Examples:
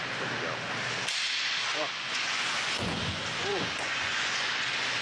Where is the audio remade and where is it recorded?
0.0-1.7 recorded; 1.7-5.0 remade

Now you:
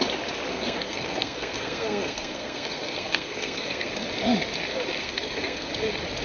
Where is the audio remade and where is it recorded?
0.0-0.5 recorded; 0.5-3.9 remade; 3.9-5.0 recorded; 5.0-5.7 remade; 5.7-6.2 recorded

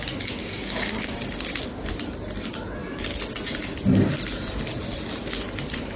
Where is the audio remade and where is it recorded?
0.0-0.4 recorded; 0.4-1.9 remade; 1.9-6.0 recorded

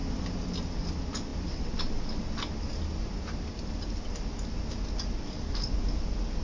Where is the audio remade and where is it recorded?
0.0-6.4 recorded